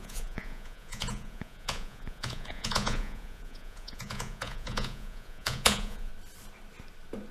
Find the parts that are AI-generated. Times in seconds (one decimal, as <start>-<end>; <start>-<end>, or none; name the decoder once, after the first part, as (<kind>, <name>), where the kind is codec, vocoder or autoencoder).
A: 0.0-6.1 (vocoder, Vocos)